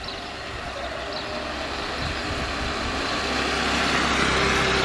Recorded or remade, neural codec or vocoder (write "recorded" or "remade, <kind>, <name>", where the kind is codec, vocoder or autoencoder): recorded